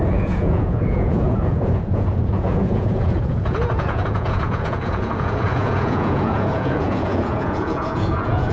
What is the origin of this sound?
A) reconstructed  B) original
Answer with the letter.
A